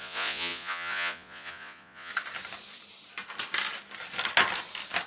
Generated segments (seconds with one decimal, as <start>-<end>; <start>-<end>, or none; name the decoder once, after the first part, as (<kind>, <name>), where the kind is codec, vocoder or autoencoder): 0.0-2.1 (vocoder, Vocos)